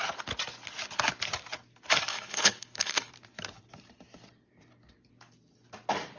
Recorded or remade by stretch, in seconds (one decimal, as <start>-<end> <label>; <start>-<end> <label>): 0.0-2.1 recorded; 2.1-3.1 remade; 3.1-6.2 recorded